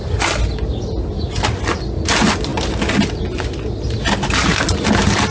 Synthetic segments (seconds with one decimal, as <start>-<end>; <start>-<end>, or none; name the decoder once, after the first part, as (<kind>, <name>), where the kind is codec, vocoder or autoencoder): none